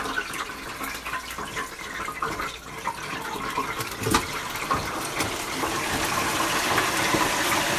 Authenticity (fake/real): real